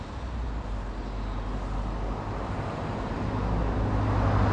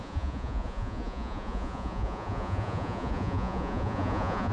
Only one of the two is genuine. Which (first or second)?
first